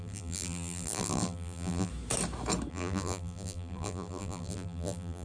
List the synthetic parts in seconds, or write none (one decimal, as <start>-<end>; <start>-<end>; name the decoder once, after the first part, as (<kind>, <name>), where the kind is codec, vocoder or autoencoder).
0.0-1.9 (vocoder, BigVGAN v2); 2.7-5.2